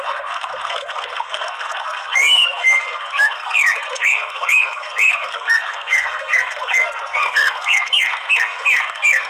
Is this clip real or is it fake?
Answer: fake